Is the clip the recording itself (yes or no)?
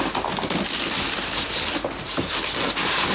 yes